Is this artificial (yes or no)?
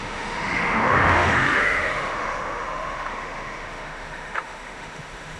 yes